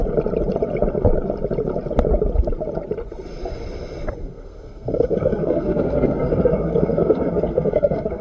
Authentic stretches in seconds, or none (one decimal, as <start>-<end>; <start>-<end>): 0.0-4.2